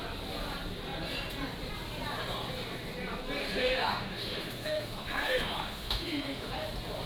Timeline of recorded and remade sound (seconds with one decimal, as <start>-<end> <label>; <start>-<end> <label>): 0.0-3.4 recorded; 3.4-6.5 remade; 6.5-7.1 recorded